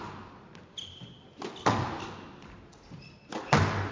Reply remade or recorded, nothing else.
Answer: recorded